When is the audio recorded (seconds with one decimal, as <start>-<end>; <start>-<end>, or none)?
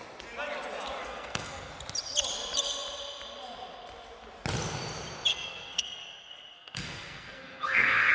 0.0-1.0; 1.7-5.3